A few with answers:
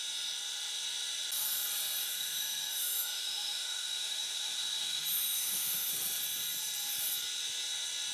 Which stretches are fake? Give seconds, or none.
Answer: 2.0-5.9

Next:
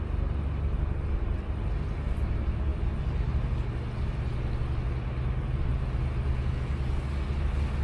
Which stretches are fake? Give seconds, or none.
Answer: none

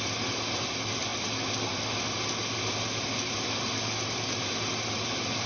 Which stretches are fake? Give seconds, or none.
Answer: none

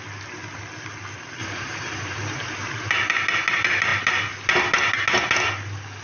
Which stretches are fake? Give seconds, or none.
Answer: 1.4-2.9